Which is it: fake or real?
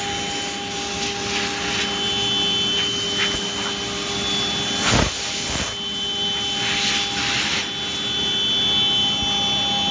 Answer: real